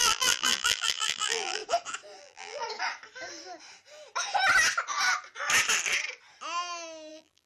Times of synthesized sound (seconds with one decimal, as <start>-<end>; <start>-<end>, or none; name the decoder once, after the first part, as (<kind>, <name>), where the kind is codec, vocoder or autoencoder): 0.0-1.6 (vocoder, BigVGAN v2); 2.2-2.6; 7.1-7.5